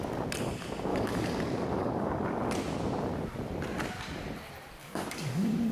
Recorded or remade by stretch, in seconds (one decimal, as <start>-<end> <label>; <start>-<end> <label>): 0.0-0.9 recorded; 0.9-2.4 remade; 2.4-4.8 recorded; 4.8-5.7 remade